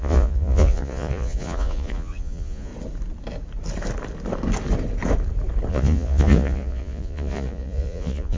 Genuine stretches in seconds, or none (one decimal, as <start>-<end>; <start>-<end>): 2.7-5.7